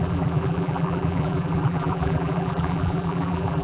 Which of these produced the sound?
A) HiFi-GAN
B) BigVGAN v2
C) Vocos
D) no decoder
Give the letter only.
B